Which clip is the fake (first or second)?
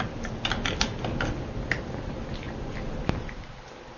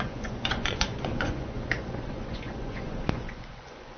second